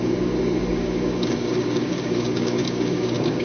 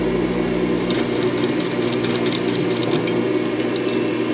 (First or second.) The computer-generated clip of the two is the first